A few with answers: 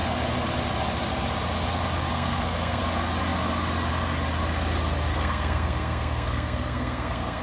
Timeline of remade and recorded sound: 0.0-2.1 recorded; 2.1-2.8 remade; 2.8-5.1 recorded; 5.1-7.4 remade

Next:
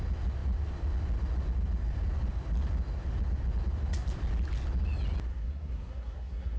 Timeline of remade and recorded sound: 0.0-5.3 recorded; 5.3-6.6 remade

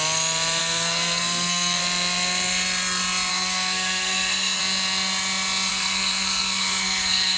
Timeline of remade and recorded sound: 0.0-0.6 recorded; 0.6-1.8 remade; 1.8-3.3 recorded; 3.3-4.6 remade; 4.6-5.7 recorded; 5.7-7.4 remade

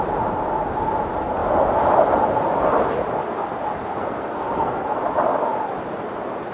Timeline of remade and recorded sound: 0.0-3.8 recorded; 3.8-5.0 remade; 5.0-6.5 recorded

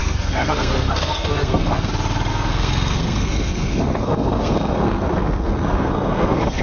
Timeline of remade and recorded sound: 0.0-1.9 remade; 1.9-2.3 recorded; 2.3-6.6 remade

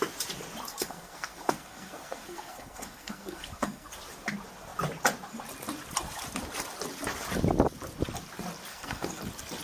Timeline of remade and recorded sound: 0.0-0.7 recorded; 0.7-3.9 remade; 3.9-8.7 recorded; 8.7-9.2 remade; 9.2-9.6 recorded